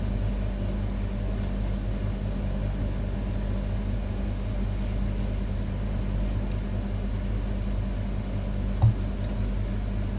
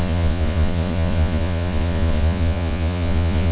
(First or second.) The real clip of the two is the first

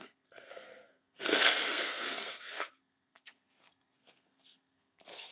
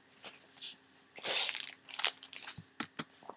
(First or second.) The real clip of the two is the second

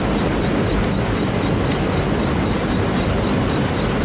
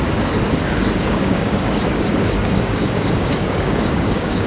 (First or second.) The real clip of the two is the first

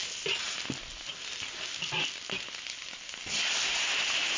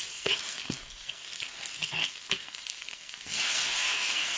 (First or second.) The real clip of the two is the first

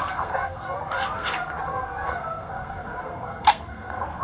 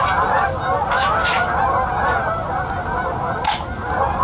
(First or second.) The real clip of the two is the second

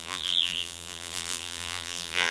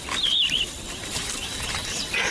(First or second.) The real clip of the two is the second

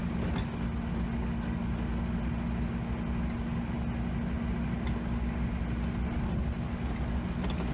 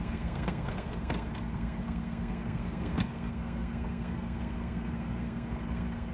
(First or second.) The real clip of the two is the first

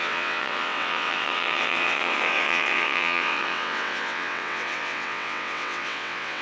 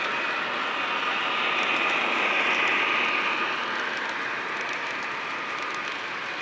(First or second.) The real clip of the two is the second